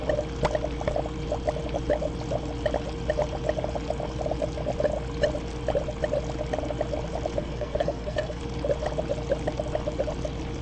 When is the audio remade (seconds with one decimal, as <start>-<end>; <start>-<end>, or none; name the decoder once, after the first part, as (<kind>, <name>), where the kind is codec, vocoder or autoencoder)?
7.4-8.4 (codec, SNAC)

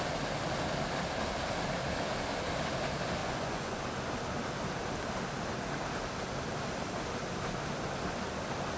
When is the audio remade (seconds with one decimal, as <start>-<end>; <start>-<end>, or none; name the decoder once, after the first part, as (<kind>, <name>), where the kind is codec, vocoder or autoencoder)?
3.2-3.8 (vocoder, Vocos)

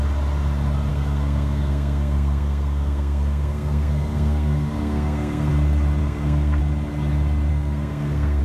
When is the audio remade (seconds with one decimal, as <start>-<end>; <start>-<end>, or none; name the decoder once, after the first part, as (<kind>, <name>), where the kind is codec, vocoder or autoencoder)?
0.9-5.5 (codec, SNAC); 6.0-6.6; 7.5-8.4

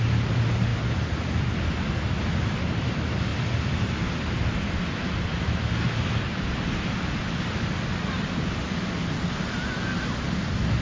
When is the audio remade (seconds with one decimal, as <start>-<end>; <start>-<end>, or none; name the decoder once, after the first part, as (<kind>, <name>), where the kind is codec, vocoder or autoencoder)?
none

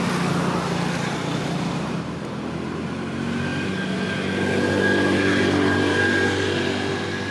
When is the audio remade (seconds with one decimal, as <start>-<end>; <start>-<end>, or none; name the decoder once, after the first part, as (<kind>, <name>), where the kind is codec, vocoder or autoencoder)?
none

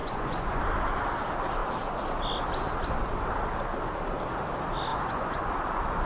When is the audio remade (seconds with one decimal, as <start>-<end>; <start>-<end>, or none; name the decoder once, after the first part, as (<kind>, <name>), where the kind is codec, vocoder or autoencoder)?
0.0-0.6 (vocoder, Vocos); 4.9-5.5

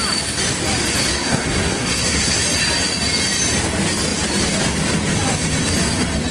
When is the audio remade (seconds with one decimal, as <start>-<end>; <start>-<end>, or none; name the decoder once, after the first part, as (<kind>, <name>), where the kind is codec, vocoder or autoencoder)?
1.1-2.4 (codec, SNAC)

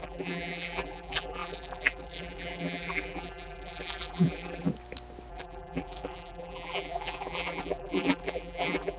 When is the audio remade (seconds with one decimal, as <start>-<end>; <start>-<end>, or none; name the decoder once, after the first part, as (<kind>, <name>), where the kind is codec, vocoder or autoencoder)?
0.0-4.7 (vocoder, BigVGAN v2); 5.3-9.0